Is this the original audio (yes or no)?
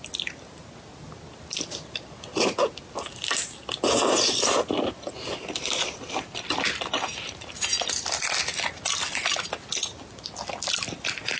yes